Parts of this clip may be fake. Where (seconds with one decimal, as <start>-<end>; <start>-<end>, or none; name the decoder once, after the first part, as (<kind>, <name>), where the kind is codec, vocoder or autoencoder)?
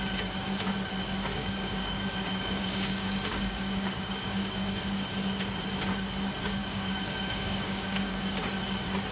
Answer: 1.4-4.8 (codec, DAC); 6.6-8.4